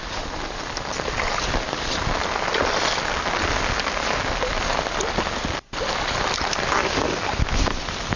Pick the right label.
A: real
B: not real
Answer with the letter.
A